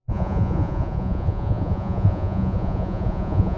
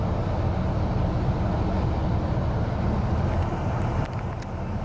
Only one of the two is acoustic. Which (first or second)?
second